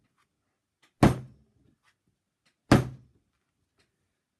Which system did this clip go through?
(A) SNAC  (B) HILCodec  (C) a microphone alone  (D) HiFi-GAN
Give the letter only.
C